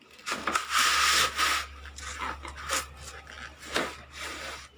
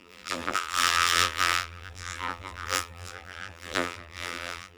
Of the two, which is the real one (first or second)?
first